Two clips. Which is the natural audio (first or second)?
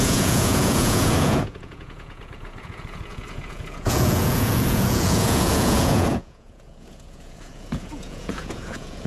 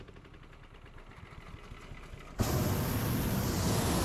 second